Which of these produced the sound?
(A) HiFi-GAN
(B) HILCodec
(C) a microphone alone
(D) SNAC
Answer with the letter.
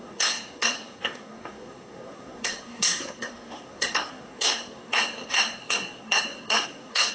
D